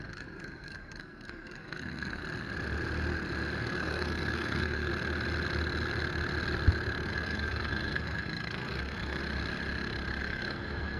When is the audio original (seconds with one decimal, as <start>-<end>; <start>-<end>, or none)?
2.2-3.6; 4.9-7.1; 9.2-10.2